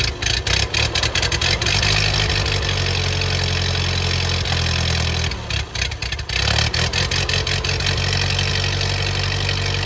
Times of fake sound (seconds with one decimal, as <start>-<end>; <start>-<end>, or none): none